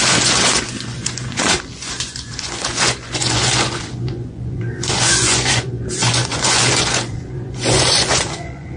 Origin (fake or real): fake